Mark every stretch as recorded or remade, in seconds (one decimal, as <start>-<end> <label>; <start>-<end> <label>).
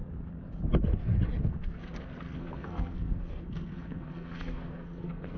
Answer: 0.0-1.4 recorded; 1.4-5.4 remade